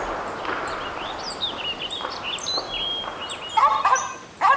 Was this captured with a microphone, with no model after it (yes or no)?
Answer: yes